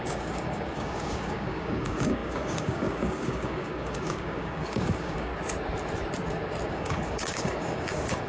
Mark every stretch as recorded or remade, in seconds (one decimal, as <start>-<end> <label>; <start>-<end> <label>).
0.0-5.3 remade; 5.3-6.7 recorded; 6.7-8.3 remade